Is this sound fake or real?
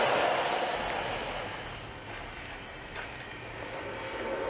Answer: real